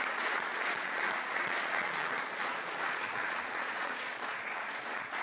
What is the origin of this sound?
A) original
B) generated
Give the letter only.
B